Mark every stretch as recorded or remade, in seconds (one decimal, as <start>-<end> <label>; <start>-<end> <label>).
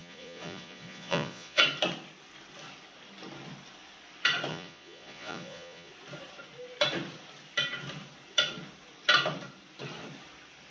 0.0-1.6 remade; 1.6-4.5 recorded; 4.5-5.9 remade; 5.9-10.7 recorded